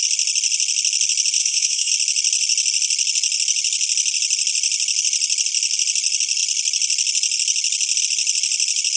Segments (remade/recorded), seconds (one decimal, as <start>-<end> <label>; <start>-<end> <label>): 0.0-1.4 recorded; 1.4-1.9 remade; 1.9-9.0 recorded